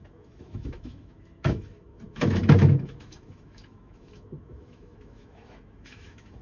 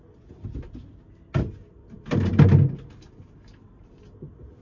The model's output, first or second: first